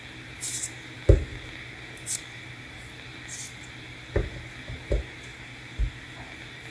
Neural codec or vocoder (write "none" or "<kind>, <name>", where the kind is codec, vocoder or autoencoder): none